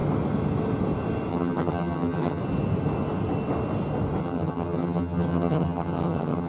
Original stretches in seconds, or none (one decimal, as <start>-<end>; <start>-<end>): 0.0-1.3; 2.4-4.2